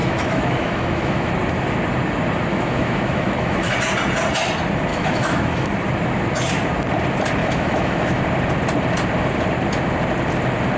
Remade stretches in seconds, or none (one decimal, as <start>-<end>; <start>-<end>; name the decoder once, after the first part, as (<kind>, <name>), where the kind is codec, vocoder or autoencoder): 0.0-1.3 (autoencoder, DAC-VAE); 2.5-3.7; 4.9-5.7; 7.4-8.2